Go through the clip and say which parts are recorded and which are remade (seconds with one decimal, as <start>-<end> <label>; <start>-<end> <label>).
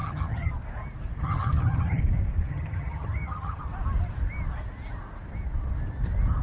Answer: 0.0-0.5 remade; 0.5-1.2 recorded; 1.2-2.0 remade; 2.0-2.5 recorded; 2.5-3.6 remade; 3.6-6.4 recorded